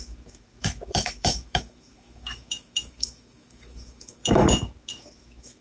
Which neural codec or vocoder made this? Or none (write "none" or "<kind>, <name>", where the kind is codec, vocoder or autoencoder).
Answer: autoencoder, DAC-VAE